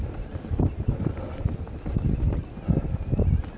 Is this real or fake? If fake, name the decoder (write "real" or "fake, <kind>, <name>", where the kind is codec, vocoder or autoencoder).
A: real